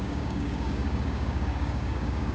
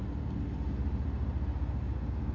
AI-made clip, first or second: first